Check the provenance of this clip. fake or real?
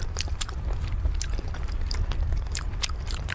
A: fake